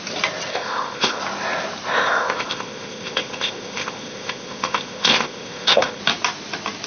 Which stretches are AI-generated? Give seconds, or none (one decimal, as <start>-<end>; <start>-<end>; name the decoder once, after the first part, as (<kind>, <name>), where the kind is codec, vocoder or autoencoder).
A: 0.5-1.2 (codec, ZipCodec); 1.9-6.0